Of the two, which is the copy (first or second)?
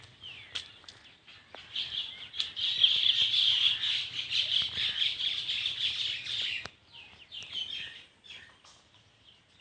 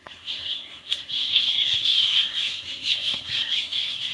second